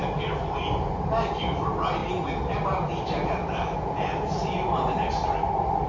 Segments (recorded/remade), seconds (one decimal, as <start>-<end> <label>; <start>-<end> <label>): 0.0-5.9 recorded